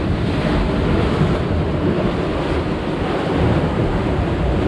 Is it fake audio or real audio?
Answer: real